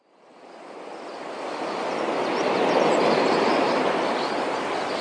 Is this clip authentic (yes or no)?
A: yes